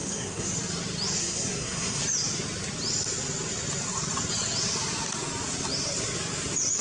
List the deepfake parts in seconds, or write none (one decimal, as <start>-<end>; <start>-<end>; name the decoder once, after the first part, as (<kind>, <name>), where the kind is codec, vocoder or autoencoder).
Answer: 0.0-0.5 (codec, SNAC); 1.2-2.0